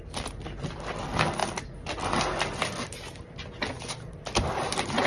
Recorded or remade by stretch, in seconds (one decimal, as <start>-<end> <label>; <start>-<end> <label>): 0.0-5.1 recorded